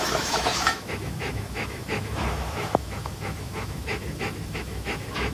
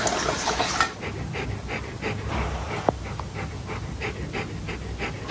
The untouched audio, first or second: second